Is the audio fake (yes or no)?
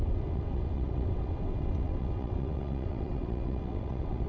yes